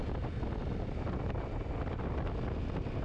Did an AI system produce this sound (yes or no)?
no